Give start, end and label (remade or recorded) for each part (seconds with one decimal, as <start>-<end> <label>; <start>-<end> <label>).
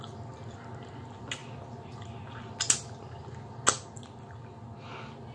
0.0-5.3 recorded